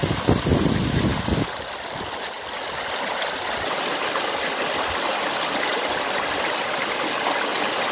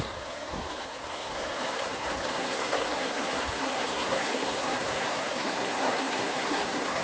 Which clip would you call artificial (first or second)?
second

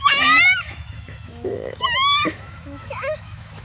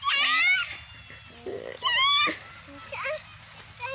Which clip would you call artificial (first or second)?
first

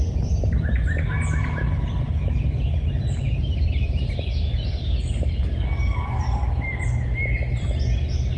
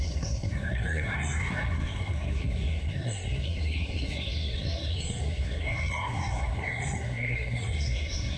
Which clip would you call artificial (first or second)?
second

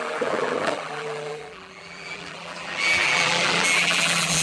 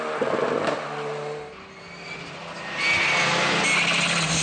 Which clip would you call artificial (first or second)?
first